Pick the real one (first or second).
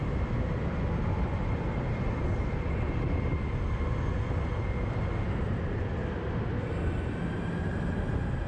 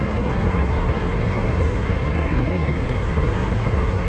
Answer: first